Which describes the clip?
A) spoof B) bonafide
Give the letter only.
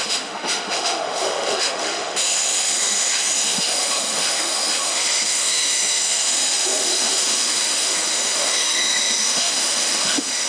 A